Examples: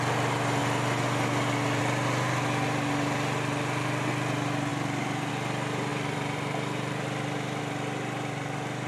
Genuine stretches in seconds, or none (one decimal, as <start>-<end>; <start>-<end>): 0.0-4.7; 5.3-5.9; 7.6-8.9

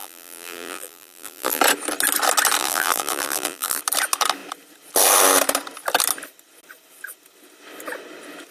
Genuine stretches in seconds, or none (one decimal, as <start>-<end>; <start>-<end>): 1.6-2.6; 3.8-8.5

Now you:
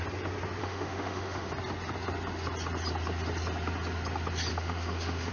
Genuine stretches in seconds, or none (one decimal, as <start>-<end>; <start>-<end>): 0.0-0.6; 1.5-4.5

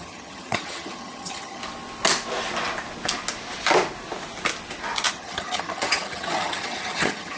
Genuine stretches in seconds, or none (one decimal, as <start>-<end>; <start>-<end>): 1.6-5.1

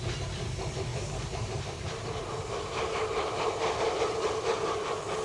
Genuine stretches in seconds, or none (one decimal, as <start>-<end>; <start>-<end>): 0.0-0.9; 3.8-5.2

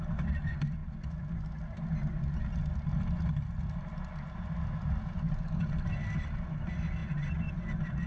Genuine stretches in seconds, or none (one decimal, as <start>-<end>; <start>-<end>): 0.0-8.1

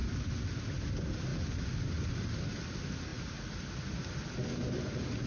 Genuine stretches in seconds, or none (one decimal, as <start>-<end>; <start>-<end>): 0.0-1.3; 2.1-3.1; 4.1-5.3

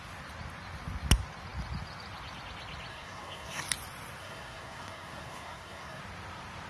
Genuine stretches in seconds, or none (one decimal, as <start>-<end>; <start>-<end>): 0.0-2.9; 3.6-4.2; 6.0-6.7